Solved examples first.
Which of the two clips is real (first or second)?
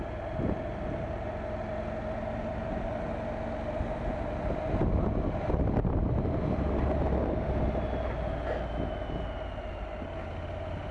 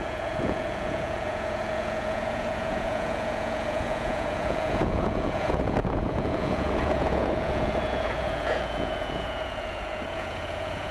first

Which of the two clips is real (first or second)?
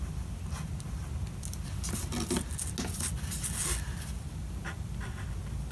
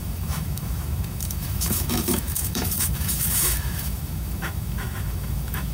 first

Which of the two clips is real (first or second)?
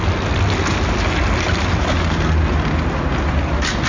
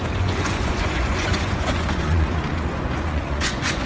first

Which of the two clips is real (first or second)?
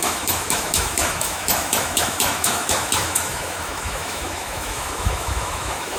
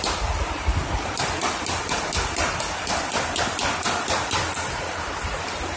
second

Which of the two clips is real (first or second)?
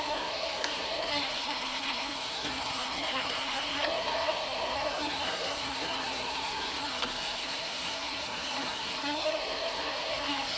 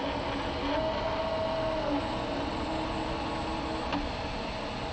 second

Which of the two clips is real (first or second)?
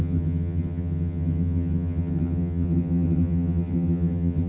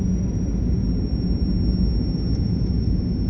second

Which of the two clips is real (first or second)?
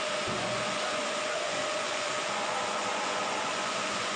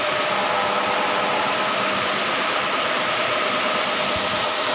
second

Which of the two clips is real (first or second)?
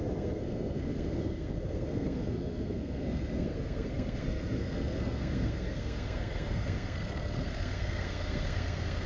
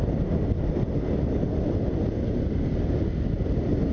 second